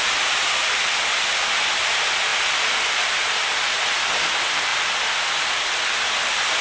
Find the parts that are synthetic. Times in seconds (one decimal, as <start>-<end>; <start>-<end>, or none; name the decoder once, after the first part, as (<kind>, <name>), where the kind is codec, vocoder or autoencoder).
none